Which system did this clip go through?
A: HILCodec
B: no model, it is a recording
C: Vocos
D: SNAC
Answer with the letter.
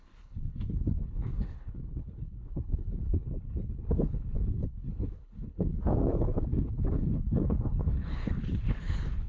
A